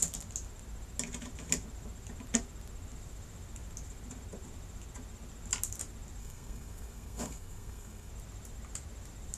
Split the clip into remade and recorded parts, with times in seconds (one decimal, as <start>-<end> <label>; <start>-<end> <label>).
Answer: 0.0-6.2 recorded; 6.2-8.1 remade; 8.1-9.4 recorded